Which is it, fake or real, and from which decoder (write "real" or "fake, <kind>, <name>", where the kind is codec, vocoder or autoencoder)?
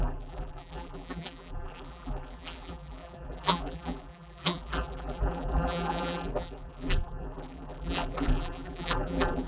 fake, vocoder, BigVGAN v2